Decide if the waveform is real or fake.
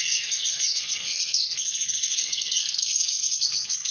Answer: fake